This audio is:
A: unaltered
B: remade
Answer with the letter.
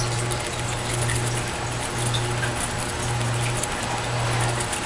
A